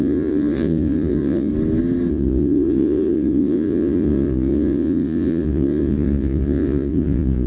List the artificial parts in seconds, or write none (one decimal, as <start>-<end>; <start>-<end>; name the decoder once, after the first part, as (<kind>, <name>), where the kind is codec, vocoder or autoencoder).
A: 0.0-1.5 (vocoder, Vocos); 2.1-7.5